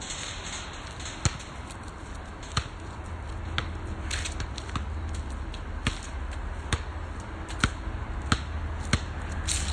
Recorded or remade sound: recorded